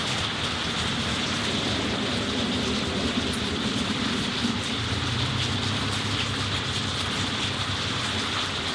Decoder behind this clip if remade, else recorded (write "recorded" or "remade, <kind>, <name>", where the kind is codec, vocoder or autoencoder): remade, vocoder, BigVGAN v2